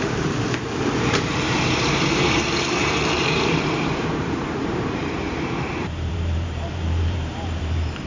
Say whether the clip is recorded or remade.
remade